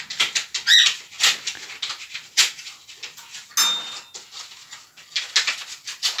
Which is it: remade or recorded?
recorded